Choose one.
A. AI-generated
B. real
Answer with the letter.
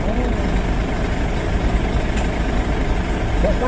B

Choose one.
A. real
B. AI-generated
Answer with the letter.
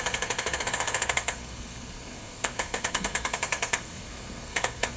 B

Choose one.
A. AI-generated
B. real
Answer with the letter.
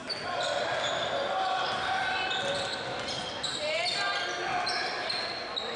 B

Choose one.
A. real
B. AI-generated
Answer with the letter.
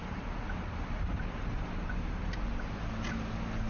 A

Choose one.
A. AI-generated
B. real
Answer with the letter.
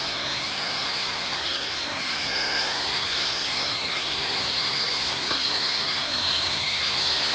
A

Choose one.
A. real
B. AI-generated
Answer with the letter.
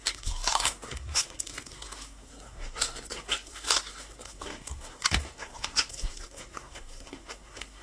B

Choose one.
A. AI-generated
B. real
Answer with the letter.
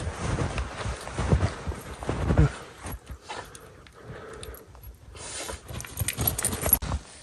B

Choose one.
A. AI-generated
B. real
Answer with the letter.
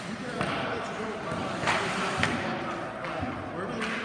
B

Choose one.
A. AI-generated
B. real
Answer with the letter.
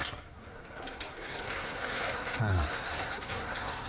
A